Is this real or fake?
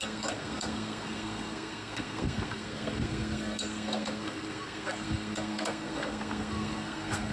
fake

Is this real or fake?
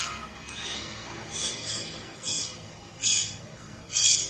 fake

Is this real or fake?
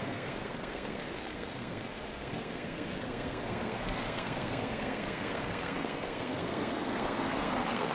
fake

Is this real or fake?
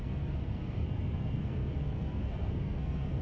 fake